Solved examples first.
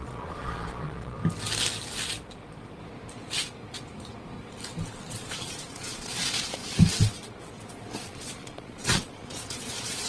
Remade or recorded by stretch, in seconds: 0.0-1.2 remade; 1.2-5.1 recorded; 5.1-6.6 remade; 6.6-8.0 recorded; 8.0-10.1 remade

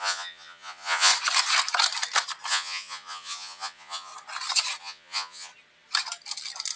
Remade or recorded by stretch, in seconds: 0.0-1.1 remade; 1.1-2.5 recorded; 2.5-4.1 remade; 4.1-4.8 recorded; 4.8-5.5 remade; 5.5-6.8 recorded